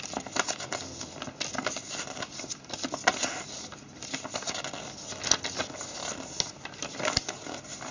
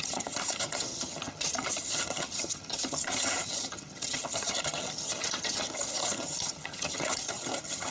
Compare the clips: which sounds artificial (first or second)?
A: second